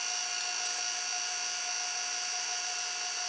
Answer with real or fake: real